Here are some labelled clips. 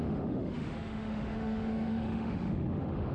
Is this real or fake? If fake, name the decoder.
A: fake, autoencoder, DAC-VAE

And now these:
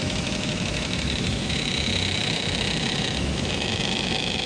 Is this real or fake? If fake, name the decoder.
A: fake, autoencoder, DAC-VAE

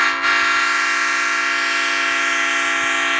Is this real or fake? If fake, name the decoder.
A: real